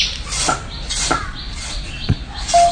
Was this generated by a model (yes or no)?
no